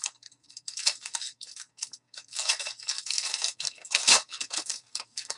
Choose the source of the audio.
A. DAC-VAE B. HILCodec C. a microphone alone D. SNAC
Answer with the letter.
D